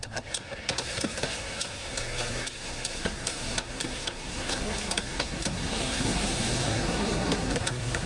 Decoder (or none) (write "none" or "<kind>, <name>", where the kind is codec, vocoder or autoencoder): codec, SNAC